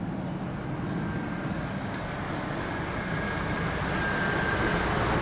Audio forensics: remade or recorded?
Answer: recorded